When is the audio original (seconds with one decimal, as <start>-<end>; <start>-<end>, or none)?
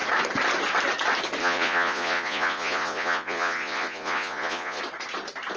0.0-1.4; 4.8-5.6